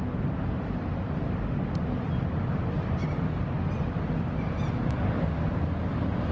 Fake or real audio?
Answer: real